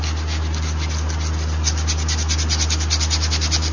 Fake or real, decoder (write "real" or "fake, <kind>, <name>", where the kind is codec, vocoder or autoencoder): real